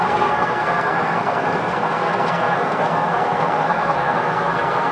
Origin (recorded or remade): remade